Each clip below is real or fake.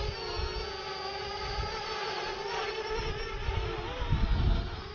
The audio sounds real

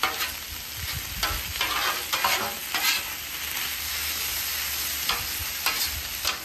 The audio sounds real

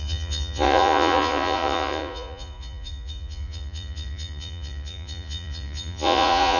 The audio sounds fake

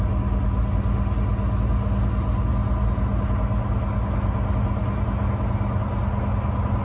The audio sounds real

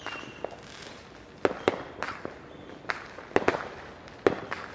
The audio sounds real